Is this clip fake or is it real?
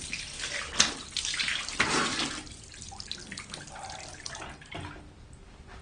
real